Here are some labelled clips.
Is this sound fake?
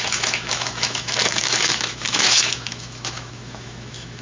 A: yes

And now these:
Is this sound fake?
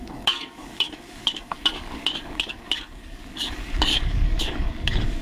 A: yes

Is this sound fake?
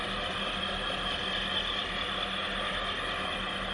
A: no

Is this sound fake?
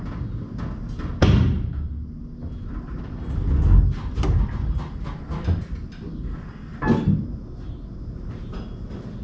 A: no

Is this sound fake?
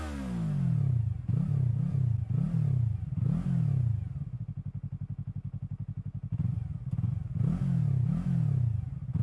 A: no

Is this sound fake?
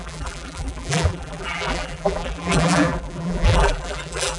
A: yes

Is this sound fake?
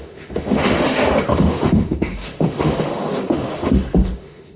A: yes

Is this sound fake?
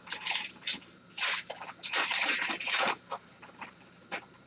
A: yes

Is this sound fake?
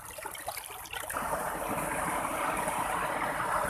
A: yes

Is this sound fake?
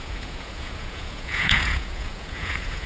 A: yes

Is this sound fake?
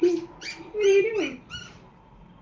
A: no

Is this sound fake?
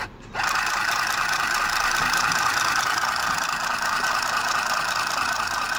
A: no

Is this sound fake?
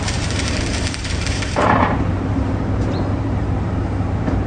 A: yes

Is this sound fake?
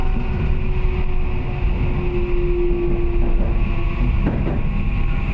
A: no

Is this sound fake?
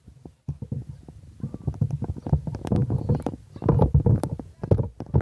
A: no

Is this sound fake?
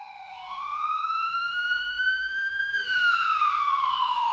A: yes